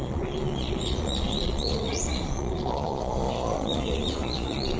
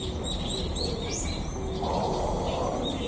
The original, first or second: second